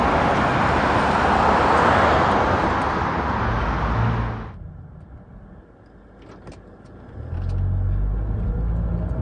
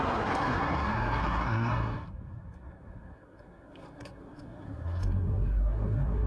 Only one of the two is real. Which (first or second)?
first